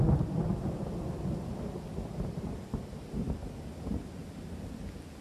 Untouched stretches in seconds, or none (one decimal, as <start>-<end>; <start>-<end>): 0.0-5.2